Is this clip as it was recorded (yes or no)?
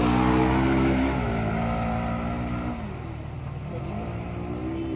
yes